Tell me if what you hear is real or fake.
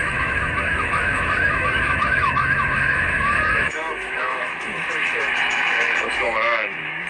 fake